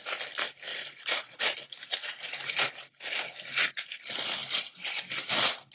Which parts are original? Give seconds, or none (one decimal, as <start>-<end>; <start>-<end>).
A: 0.0-0.7; 1.4-2.3; 2.9-5.7